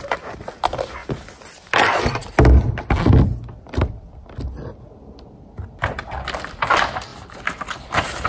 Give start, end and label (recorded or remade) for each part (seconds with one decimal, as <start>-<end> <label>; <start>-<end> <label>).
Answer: 0.0-7.1 recorded; 7.1-8.3 remade